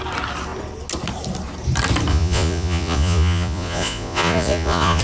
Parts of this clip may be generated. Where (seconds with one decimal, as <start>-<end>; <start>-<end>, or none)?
2.1-5.0